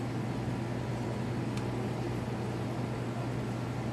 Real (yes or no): yes